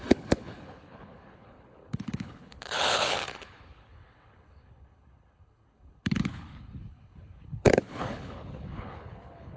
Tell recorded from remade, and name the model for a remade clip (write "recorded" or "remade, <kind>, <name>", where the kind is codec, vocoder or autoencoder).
remade, codec, HILCodec